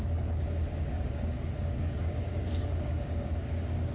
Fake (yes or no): yes